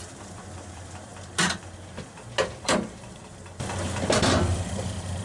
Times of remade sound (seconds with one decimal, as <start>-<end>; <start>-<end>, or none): 0.0-1.1; 4.2-5.2